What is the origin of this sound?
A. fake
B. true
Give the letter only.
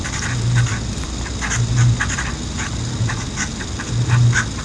B